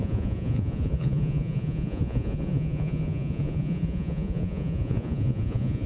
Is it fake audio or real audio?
fake